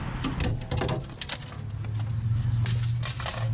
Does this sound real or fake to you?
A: real